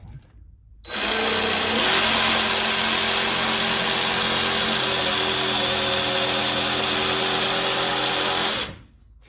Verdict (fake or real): real